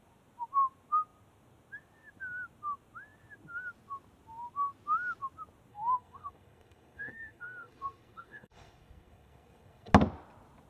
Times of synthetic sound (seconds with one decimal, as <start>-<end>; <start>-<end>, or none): 5.7-9.9

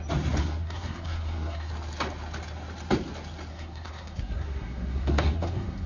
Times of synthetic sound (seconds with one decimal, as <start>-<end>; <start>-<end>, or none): 0.4-1.7; 3.5-5.9

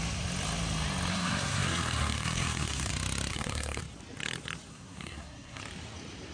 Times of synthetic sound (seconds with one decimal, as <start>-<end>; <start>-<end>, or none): 1.1-2.9; 3.3-3.8; 4.7-5.6

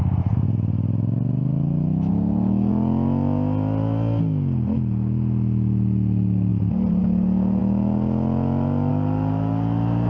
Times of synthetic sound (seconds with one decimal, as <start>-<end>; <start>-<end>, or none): none

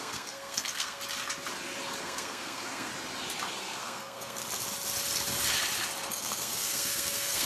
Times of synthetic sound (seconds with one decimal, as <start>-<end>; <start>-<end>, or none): 0.0-1.0; 2.0-2.9; 3.6-4.4; 6.1-7.5

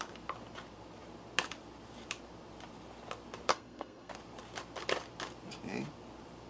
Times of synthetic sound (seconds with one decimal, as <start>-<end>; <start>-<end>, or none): 3.5-4.1

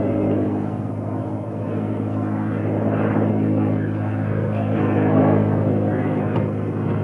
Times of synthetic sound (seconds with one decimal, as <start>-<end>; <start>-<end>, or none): 0.0-2.6; 3.3-7.0

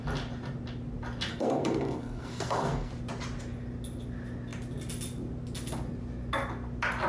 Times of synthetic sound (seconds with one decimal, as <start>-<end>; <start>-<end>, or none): 1.3-2.9